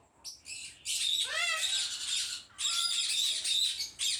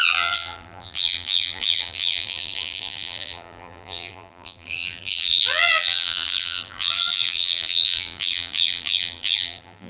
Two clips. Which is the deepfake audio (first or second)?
second